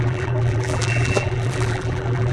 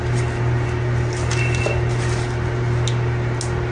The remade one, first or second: first